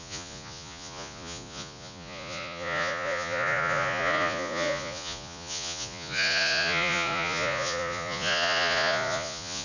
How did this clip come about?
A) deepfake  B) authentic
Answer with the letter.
A